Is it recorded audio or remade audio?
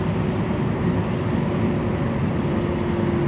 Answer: recorded